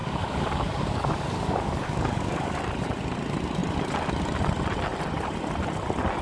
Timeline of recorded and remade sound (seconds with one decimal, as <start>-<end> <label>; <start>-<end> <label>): 0.0-2.6 remade; 2.6-6.2 recorded